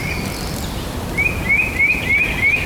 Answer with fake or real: real